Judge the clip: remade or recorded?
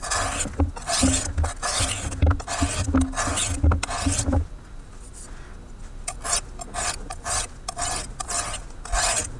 recorded